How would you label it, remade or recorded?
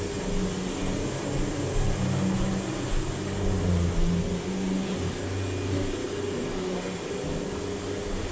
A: recorded